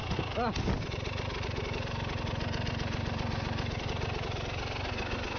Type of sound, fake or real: real